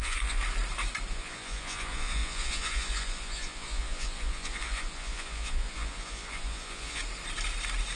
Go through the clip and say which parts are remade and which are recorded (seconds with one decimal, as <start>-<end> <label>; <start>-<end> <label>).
0.0-0.4 remade; 0.4-1.1 recorded; 1.1-7.0 remade; 7.0-8.0 recorded